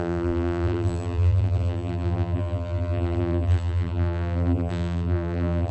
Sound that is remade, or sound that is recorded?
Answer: remade